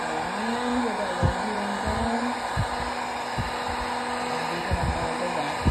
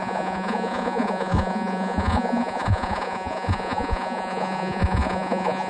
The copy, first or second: second